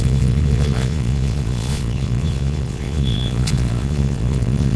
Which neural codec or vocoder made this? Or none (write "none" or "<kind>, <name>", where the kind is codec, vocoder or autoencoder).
vocoder, Vocos